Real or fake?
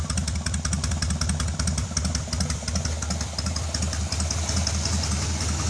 real